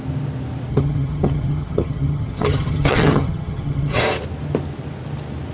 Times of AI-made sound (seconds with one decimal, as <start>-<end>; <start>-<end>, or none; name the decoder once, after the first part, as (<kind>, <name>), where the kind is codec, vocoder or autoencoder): 0.7-4.0 (vocoder, HiFi-GAN)